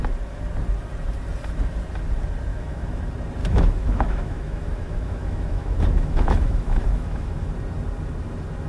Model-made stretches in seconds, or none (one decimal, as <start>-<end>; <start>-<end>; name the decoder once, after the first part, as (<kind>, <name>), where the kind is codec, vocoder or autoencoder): 2.5-3.0 (autoencoder, DAC-VAE); 3.4-7.5